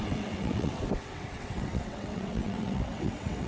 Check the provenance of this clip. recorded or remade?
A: remade